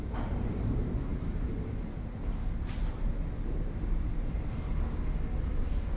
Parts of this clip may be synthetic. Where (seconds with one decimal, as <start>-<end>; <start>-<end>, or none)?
none